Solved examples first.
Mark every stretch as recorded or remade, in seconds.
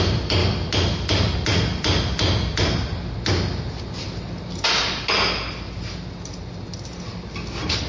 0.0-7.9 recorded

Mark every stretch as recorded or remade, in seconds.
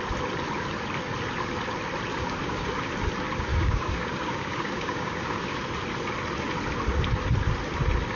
0.0-2.1 recorded; 2.1-2.9 remade; 2.9-3.5 recorded; 3.5-5.6 remade; 5.6-8.2 recorded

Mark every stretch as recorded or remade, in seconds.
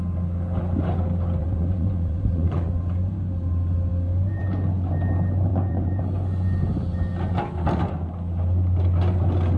0.0-1.4 recorded; 1.4-2.7 remade; 2.7-5.5 recorded; 5.5-6.0 remade; 6.0-9.6 recorded